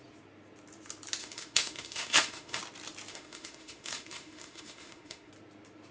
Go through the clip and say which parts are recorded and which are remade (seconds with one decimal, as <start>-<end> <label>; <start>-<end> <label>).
0.0-1.2 recorded; 1.2-2.6 remade; 2.6-3.1 recorded; 3.1-5.3 remade; 5.3-5.9 recorded